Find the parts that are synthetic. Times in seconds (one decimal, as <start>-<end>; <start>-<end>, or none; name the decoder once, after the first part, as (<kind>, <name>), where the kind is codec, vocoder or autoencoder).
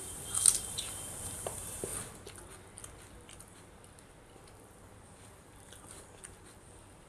0.0-1.9 (vocoder, BigVGAN v2); 4.6-7.1